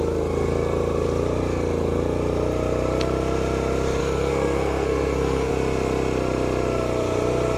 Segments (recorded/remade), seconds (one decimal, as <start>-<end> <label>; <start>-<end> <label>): 0.0-4.0 recorded; 4.0-5.5 remade; 5.5-7.6 recorded